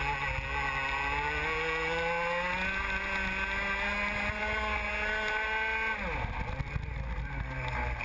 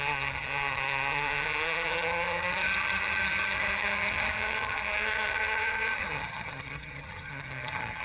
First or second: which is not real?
second